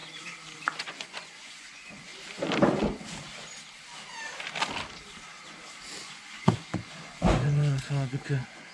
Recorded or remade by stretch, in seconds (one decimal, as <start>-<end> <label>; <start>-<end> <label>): 0.0-0.8 recorded; 0.8-2.1 remade; 2.1-6.0 recorded; 6.0-8.7 remade

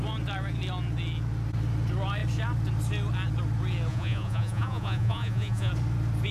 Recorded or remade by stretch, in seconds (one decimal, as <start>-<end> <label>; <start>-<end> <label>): 0.0-3.9 recorded; 3.9-5.7 remade; 5.7-6.3 recorded

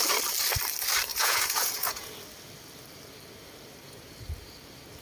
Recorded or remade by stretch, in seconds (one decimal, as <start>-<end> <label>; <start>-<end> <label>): 0.0-1.1 recorded; 1.1-2.1 remade; 2.1-5.0 recorded

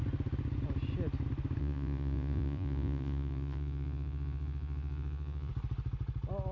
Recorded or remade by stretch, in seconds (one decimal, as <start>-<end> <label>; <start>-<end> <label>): 0.0-1.6 recorded; 1.6-5.5 remade; 5.5-6.5 recorded

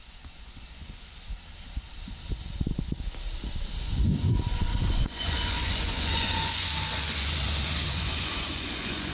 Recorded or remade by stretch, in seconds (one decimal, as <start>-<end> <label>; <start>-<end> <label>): 0.0-1.3 remade; 1.3-3.8 recorded; 3.8-9.1 remade

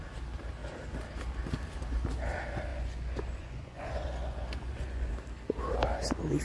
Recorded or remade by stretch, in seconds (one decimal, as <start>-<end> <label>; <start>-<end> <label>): 0.0-2.7 recorded; 2.7-5.1 remade; 5.1-6.4 recorded

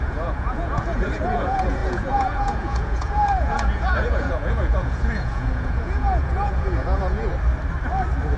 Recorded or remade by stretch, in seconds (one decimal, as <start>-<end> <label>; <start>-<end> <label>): 0.0-7.3 remade; 7.3-8.4 recorded

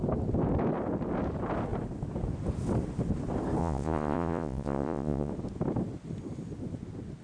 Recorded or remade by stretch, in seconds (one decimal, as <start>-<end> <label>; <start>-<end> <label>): 0.0-3.6 recorded; 3.6-5.3 remade; 5.3-7.2 recorded